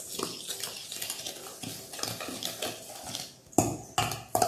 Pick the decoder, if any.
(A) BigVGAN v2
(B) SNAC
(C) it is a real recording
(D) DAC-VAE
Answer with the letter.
C